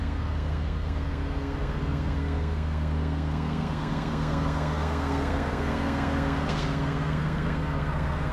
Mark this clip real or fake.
fake